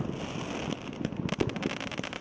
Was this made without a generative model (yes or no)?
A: yes